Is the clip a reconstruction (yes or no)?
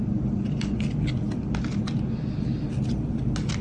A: no